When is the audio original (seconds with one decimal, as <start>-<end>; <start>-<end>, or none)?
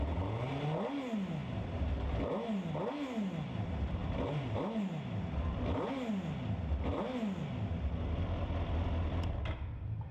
0.0-10.1